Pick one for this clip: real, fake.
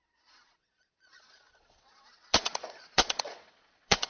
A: fake